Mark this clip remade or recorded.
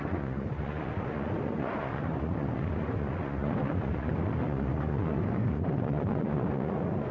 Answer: remade